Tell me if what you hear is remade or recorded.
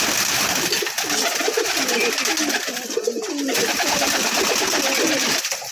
recorded